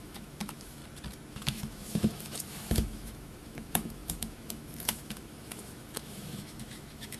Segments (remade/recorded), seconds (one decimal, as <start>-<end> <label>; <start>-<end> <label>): 0.0-0.8 remade; 0.8-1.3 recorded; 1.3-7.2 remade